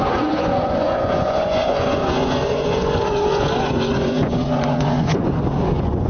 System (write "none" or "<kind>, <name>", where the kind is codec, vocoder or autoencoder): vocoder, Vocos